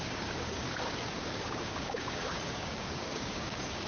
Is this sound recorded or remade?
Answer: remade